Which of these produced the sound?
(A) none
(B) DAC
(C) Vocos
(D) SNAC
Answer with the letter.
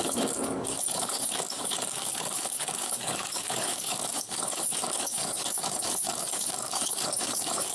B